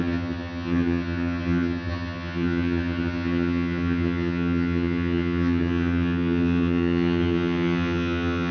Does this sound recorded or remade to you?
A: remade